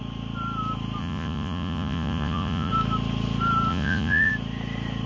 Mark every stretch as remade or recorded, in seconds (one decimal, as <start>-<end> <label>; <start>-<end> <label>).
0.0-1.0 recorded; 1.0-2.7 remade; 2.7-3.7 recorded; 3.7-4.3 remade; 4.3-5.1 recorded